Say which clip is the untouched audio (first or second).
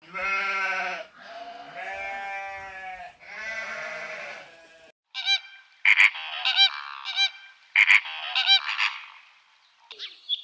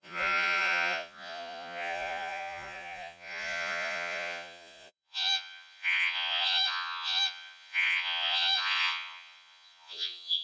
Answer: first